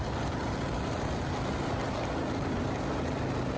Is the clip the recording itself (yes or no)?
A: yes